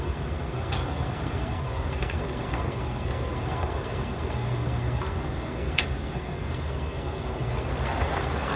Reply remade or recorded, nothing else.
remade